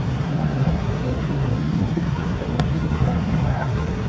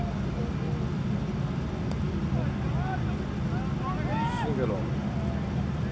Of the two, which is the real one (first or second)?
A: second